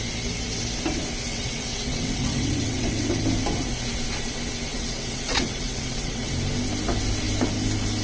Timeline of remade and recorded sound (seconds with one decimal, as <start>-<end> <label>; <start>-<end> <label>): 0.0-1.3 recorded; 1.3-3.1 remade; 3.1-4.7 recorded; 4.7-6.3 remade; 6.3-8.0 recorded